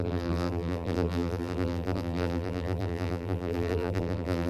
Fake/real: fake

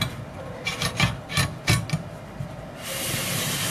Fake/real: real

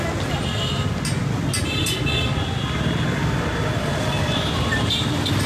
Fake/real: real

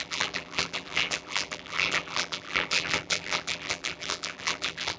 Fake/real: fake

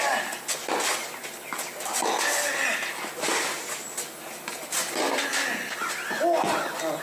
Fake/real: real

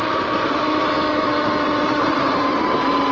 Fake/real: real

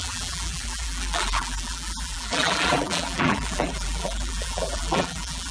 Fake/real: fake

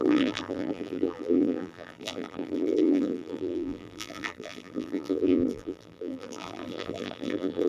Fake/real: fake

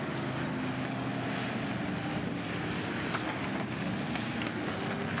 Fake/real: real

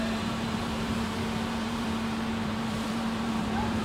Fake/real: fake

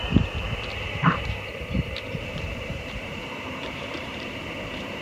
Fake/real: fake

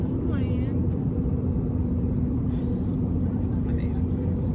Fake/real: fake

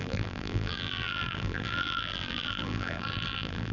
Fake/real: fake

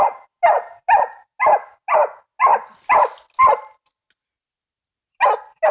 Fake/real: real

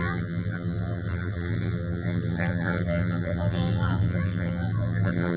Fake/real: fake